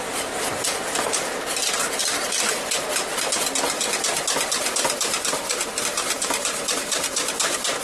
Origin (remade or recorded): recorded